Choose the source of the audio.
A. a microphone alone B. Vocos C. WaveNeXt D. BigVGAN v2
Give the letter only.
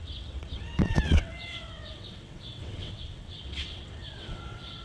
C